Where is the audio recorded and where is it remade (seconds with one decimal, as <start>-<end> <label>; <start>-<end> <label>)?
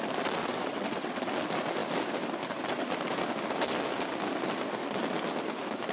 0.0-0.4 recorded; 0.4-1.3 remade; 1.3-5.9 recorded